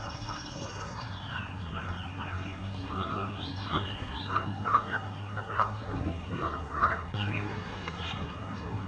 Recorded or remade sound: remade